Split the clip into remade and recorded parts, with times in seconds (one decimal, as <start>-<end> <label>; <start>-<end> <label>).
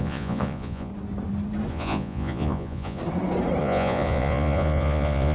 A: 0.0-0.9 remade; 0.9-1.7 recorded; 1.7-3.0 remade; 3.0-3.6 recorded; 3.6-5.3 remade